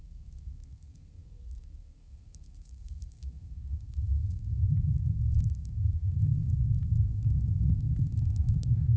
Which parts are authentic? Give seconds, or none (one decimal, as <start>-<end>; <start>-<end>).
none